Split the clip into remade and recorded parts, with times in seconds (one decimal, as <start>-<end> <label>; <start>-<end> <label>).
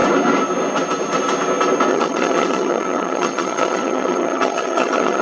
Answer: 0.0-1.9 recorded; 1.9-5.2 remade